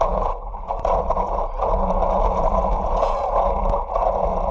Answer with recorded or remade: remade